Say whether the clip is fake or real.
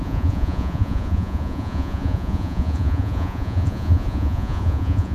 fake